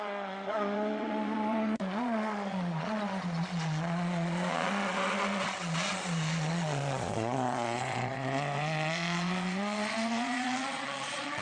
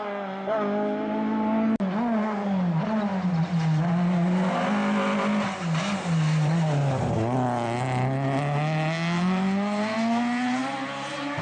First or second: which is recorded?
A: second